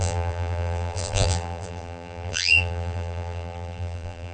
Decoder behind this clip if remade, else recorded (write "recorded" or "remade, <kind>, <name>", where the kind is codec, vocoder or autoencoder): remade, vocoder, BigVGAN v2